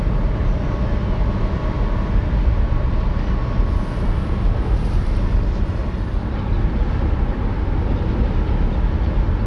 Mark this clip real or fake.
real